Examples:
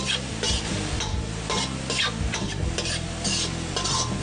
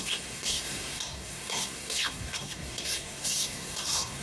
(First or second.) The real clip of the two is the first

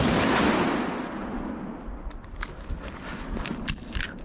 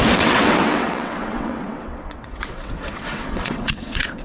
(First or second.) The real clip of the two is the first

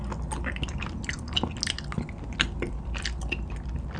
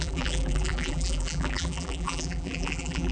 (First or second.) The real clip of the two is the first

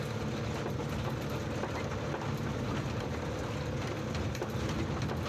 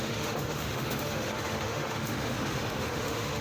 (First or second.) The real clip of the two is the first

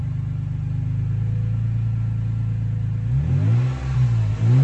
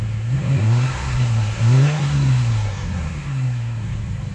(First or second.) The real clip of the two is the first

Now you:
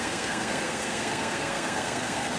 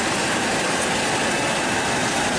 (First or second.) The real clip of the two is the second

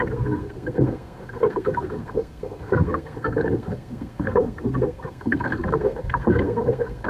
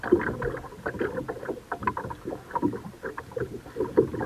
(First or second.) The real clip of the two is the second